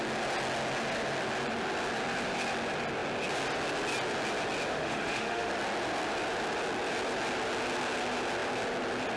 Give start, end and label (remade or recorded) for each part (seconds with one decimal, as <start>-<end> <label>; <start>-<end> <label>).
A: 0.0-4.7 recorded; 4.7-5.5 remade; 5.5-9.2 recorded